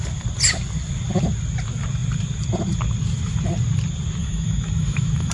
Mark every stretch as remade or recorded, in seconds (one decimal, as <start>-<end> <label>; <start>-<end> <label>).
0.0-4.2 recorded; 4.2-5.3 remade